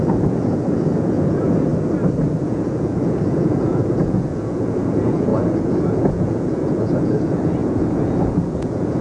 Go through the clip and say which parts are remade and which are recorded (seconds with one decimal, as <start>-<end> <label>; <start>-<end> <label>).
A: 0.0-1.7 remade; 1.7-2.3 recorded; 2.3-9.0 remade